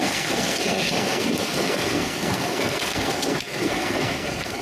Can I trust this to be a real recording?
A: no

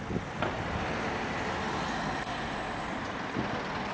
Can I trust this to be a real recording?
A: yes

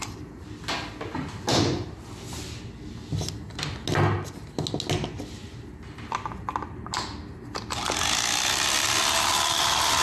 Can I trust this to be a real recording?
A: yes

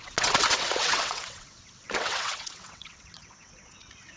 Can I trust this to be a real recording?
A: no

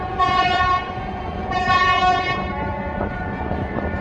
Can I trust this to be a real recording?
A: no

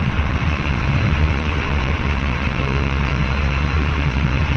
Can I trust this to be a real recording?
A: no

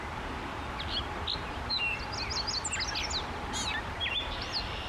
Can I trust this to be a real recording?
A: yes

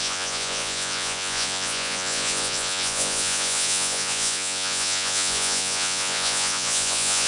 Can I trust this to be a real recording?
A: no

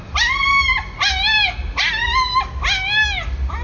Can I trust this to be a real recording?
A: yes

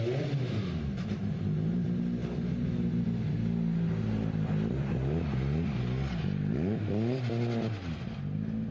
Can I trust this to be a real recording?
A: yes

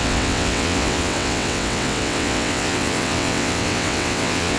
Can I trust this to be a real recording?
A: no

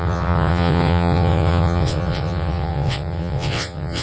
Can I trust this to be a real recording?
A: no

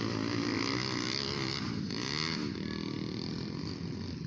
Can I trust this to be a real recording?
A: yes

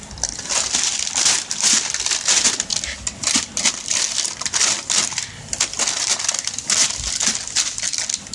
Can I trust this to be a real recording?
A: yes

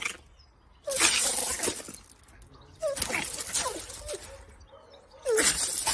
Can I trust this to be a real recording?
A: yes